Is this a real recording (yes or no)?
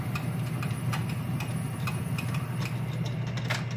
yes